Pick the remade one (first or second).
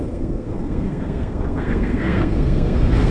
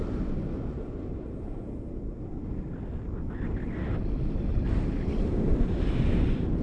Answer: first